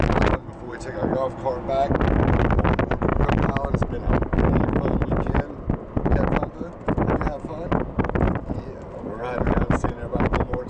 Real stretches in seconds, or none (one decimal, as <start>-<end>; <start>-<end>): 0.0-10.7